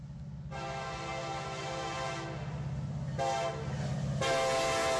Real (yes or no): yes